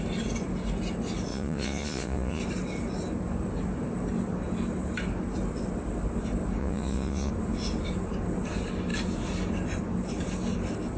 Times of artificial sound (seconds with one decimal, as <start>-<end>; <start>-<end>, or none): 1.3-2.4; 6.6-7.3